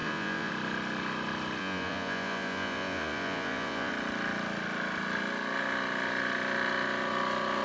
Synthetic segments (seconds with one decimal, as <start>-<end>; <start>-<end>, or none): 0.0-0.5; 1.6-3.9